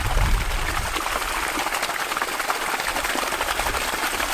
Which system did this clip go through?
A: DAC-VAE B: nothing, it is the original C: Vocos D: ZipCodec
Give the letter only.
B